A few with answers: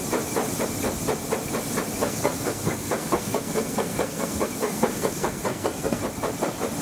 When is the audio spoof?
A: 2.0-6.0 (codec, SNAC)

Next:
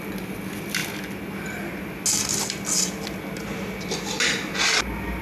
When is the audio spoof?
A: none

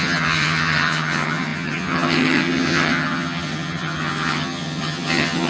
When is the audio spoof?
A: 0.0-5.5 (vocoder, HiFi-GAN)